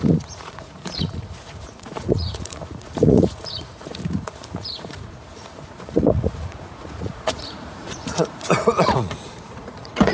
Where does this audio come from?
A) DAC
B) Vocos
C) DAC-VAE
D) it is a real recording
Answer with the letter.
B